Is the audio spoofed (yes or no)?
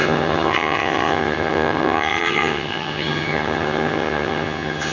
yes